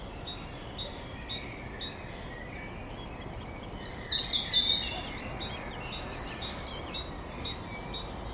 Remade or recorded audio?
recorded